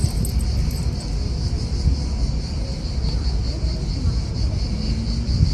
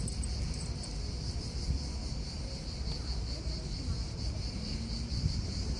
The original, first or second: first